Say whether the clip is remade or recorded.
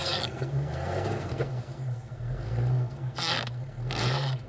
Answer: remade